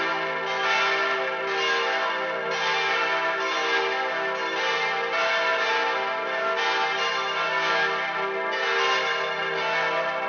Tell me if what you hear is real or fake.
real